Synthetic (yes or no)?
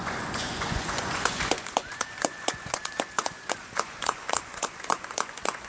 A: yes